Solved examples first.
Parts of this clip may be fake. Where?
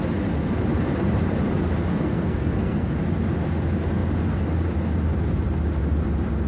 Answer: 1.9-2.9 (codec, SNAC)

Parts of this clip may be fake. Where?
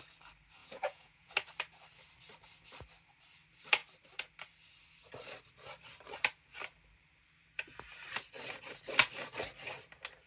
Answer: 0.6-1.3 (vocoder, Vocos)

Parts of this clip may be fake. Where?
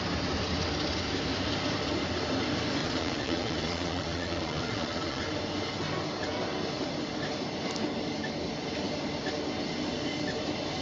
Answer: 2.8-5.2 (vocoder, Vocos)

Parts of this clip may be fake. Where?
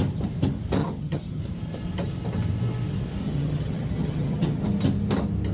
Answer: 0.8-1.4 (vocoder, HiFi-GAN); 3.2-4.6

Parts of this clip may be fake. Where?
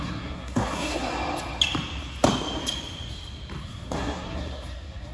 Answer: 0.0-1.1 (codec, SNAC); 3.6-5.1